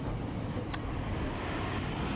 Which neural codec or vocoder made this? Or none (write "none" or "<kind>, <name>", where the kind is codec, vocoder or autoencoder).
none